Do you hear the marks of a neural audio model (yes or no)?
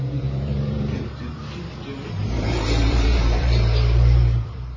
yes